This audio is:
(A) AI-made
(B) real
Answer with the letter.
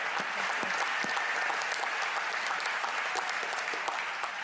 B